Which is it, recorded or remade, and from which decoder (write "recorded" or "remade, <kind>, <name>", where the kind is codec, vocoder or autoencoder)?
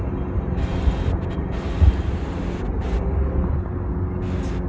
recorded